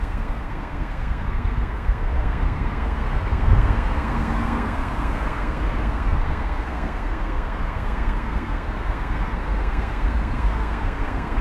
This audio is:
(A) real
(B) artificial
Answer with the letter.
B